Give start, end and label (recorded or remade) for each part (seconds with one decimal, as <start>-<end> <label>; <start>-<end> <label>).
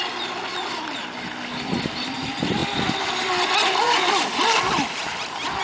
0.0-5.6 recorded